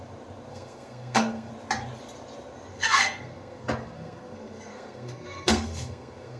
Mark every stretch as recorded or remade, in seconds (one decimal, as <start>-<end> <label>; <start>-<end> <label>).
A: 0.0-0.5 recorded; 0.5-1.5 remade; 1.5-2.7 recorded; 2.7-6.4 remade